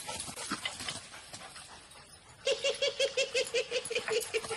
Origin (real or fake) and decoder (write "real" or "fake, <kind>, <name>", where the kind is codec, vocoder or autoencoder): real